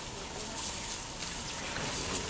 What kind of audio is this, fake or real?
real